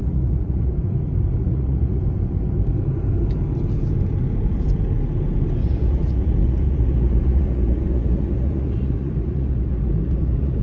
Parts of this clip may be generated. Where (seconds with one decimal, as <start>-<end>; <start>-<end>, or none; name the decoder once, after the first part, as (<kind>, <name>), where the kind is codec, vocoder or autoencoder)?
0.0-0.7 (vocoder, Vocos); 1.4-2.0; 5.6-10.6